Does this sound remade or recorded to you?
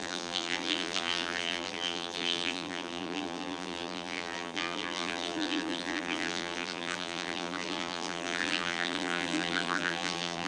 remade